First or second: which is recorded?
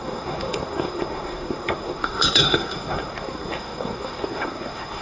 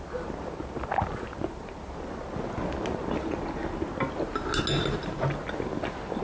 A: second